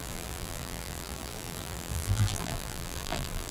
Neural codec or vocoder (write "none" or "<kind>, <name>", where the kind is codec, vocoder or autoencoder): vocoder, BigVGAN v2